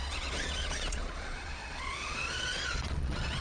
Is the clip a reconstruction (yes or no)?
yes